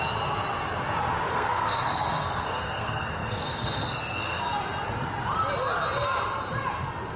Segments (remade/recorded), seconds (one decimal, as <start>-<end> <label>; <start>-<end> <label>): 0.0-1.3 recorded; 1.3-4.4 remade; 4.4-7.2 recorded